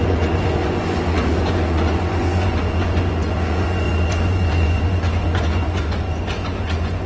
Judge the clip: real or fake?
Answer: fake